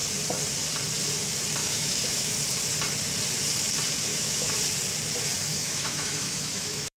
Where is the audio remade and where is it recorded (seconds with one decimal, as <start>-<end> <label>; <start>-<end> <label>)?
0.0-1.6 recorded; 1.6-2.3 remade; 2.3-4.1 recorded; 4.1-4.6 remade; 4.6-5.5 recorded; 5.5-7.0 remade